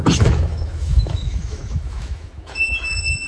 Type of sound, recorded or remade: remade